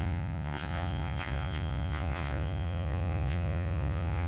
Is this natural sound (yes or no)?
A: no